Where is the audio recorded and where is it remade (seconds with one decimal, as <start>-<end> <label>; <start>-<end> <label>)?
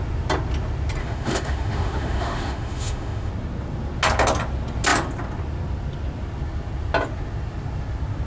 0.0-1.0 recorded; 1.0-3.3 remade; 3.3-8.3 recorded